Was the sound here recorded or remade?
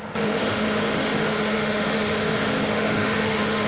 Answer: remade